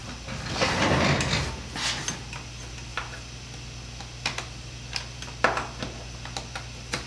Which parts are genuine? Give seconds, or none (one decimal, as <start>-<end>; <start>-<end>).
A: 0.0-7.1